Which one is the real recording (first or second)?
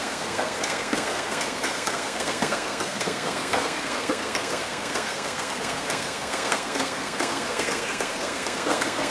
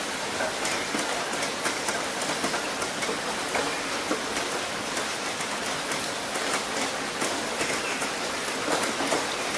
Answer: second